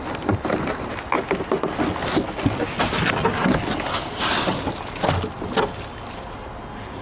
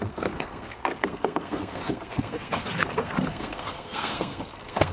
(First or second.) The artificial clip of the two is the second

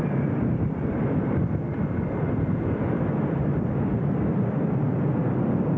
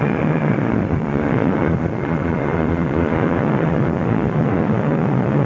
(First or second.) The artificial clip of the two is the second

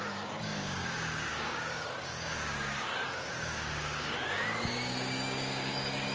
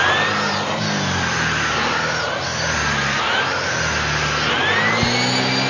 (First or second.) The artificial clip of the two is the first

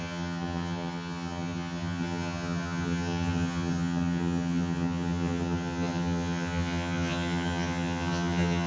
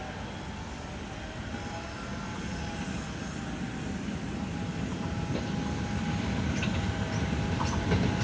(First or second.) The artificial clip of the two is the first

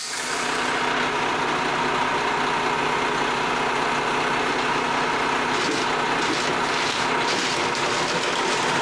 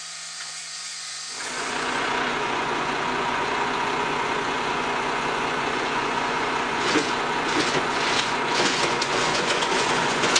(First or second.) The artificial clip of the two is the second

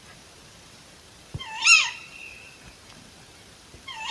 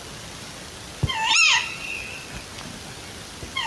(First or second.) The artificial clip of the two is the first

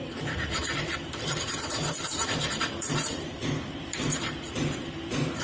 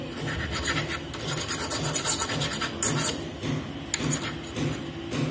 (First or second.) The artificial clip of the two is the first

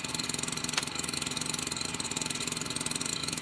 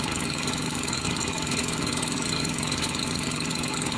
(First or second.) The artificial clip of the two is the second